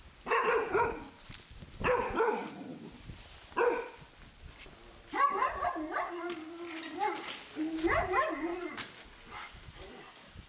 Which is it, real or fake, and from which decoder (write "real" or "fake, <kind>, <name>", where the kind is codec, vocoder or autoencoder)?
real